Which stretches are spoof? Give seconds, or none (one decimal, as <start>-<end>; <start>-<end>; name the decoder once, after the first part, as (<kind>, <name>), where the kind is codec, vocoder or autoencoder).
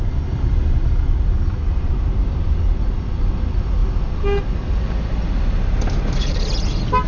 none